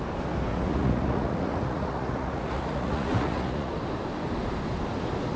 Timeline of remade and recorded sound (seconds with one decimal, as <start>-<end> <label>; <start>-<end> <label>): 0.0-0.5 recorded; 0.5-3.7 remade; 3.7-5.4 recorded